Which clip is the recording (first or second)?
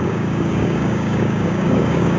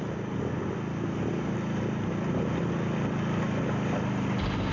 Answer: second